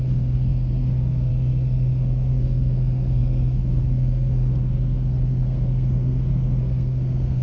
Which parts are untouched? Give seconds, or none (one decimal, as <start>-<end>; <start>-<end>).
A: none